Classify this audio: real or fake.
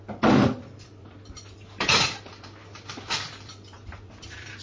fake